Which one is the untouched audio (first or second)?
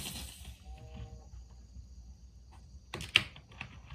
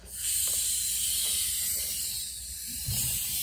first